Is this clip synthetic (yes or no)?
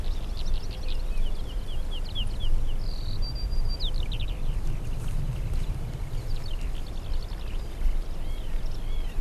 no